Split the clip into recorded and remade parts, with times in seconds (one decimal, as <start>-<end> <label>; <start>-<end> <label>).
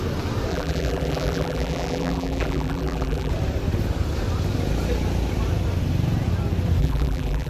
0.0-0.5 recorded; 0.5-3.3 remade; 3.3-6.8 recorded; 6.8-7.5 remade